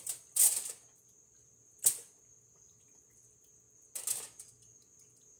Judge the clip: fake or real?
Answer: real